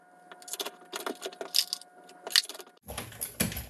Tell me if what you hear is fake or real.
real